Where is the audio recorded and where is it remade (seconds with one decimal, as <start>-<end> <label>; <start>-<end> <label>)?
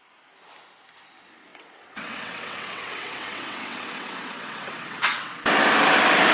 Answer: 0.0-1.5 recorded; 1.5-5.3 remade; 5.3-6.3 recorded